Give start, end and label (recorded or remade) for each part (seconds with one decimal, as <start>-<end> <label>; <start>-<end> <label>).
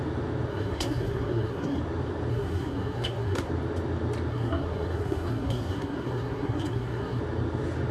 0.0-0.5 recorded; 0.5-1.8 remade; 1.8-2.3 recorded; 2.3-3.5 remade; 3.5-4.3 recorded; 4.3-7.2 remade; 7.2-7.9 recorded